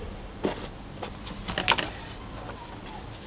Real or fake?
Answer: real